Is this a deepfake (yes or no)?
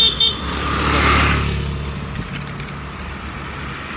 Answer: no